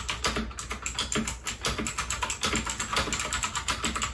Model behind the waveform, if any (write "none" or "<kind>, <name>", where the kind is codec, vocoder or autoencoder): none